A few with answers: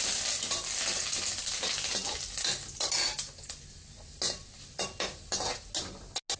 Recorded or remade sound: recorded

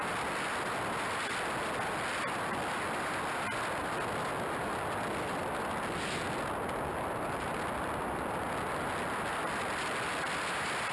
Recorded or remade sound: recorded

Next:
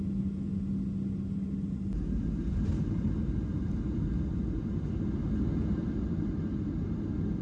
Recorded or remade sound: recorded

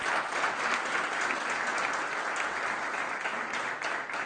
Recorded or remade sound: recorded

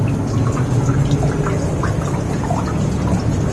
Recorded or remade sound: recorded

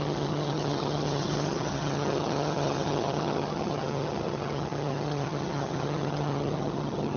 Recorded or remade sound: remade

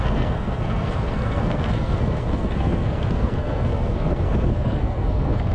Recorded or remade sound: remade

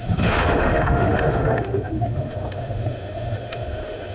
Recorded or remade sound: remade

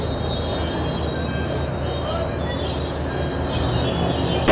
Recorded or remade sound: recorded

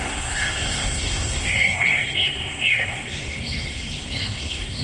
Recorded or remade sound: remade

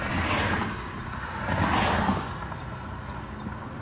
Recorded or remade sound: recorded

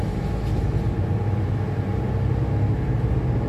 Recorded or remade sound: recorded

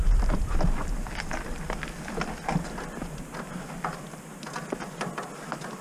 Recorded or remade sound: recorded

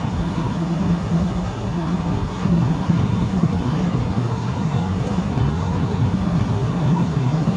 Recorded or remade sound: remade